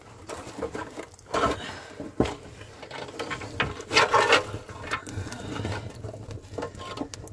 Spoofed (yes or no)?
no